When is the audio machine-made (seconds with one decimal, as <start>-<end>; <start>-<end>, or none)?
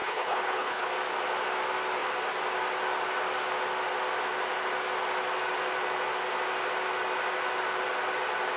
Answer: 0.0-0.9